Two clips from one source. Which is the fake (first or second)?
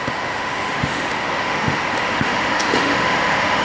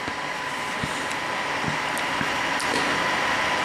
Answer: first